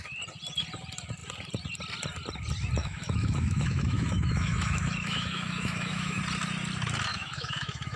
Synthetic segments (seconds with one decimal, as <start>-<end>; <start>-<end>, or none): 2.8-6.2; 7.1-8.0